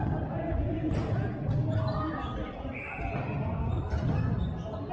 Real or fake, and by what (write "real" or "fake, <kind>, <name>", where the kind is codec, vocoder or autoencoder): real